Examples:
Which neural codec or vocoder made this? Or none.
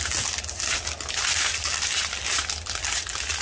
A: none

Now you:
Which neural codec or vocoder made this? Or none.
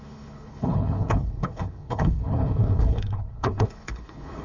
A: codec, HILCodec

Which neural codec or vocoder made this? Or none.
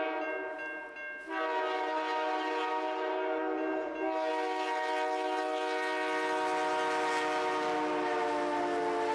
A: none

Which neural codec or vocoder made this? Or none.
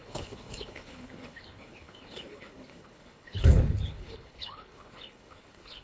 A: codec, HILCodec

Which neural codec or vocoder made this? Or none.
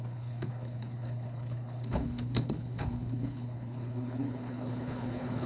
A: codec, HILCodec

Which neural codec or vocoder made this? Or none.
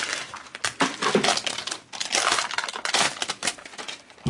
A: none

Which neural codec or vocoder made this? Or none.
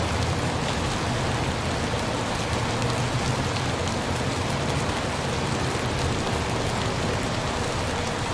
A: none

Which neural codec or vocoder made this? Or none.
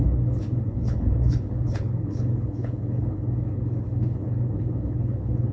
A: codec, HILCodec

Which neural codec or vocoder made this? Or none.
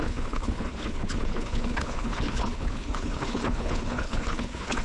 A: codec, HILCodec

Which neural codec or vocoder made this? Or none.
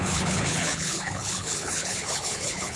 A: codec, HILCodec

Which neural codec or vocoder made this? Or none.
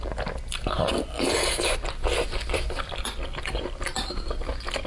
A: none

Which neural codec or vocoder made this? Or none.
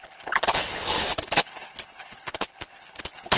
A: codec, HILCodec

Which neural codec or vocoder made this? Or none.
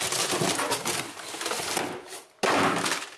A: none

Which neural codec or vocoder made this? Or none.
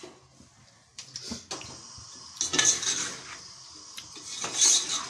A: none